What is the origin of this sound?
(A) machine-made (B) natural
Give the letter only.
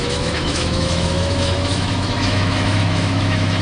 A